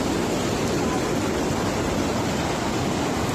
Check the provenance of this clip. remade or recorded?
recorded